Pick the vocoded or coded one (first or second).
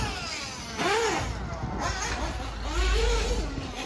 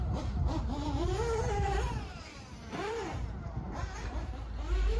second